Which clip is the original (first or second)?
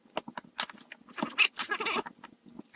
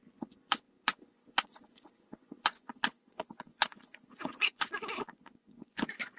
first